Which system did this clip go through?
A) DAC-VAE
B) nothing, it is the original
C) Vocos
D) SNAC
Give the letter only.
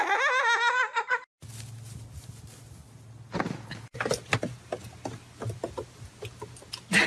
B